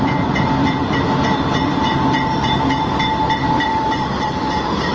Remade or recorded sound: remade